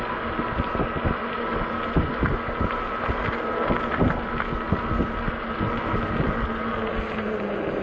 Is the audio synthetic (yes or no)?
no